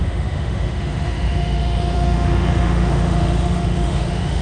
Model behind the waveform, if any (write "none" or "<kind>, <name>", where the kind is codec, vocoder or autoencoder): autoencoder, DAC-VAE